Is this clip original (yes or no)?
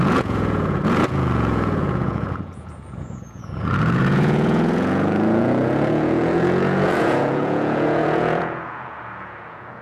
no